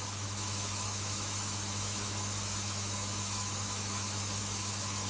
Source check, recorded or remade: remade